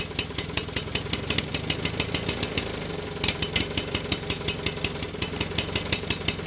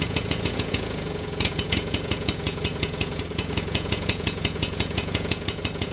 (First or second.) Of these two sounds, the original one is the first